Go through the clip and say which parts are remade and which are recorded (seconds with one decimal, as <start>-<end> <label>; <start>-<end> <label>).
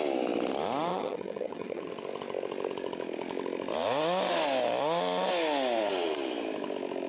0.0-0.9 recorded; 0.9-1.9 remade; 1.9-7.1 recorded